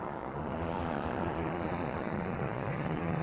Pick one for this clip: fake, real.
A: fake